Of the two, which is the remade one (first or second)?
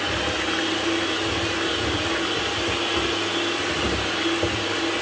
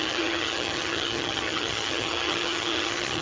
second